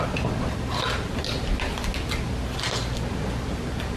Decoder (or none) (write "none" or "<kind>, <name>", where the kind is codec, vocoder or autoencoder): none